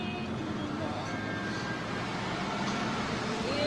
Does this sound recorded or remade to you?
recorded